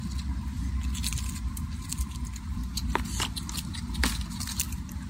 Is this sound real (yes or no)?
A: yes